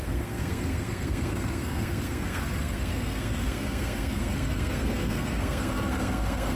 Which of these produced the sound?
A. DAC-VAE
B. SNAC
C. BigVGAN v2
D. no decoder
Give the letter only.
B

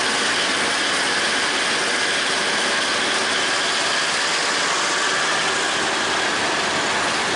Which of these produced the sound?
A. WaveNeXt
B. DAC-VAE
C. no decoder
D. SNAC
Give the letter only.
C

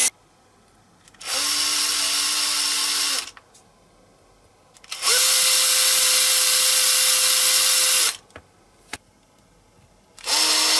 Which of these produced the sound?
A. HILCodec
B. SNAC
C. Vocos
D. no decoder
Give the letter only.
D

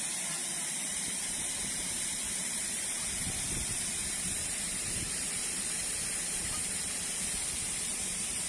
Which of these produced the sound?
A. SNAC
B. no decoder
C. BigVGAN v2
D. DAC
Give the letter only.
C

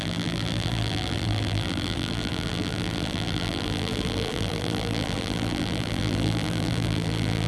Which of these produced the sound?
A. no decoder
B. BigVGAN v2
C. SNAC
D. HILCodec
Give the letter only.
B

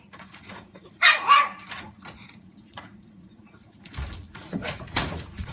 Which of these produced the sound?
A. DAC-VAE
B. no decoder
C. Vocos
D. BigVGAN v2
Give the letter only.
C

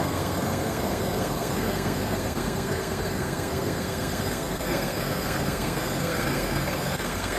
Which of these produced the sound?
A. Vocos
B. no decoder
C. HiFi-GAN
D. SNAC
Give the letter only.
D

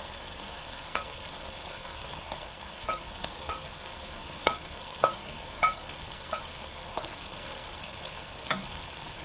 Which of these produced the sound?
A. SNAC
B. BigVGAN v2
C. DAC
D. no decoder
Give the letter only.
A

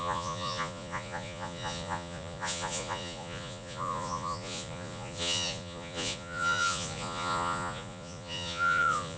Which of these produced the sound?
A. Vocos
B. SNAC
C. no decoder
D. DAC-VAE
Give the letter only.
A